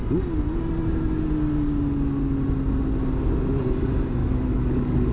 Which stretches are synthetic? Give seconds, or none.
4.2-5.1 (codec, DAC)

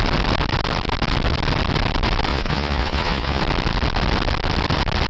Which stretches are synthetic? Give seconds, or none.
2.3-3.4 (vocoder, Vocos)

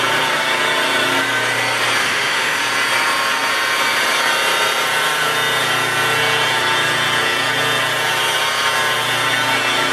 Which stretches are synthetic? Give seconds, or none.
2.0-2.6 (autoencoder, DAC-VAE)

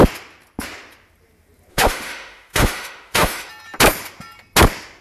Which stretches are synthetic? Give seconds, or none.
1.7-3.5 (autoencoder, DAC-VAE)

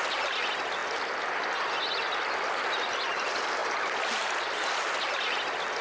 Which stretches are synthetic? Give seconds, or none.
none

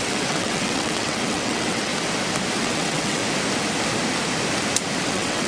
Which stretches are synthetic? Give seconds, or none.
0.0-1.9 (vocoder, WaveNeXt); 2.6-3.2; 5.1-5.5